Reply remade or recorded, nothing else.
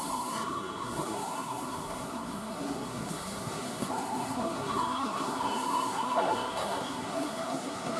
remade